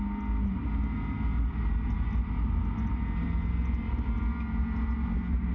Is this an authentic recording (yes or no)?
yes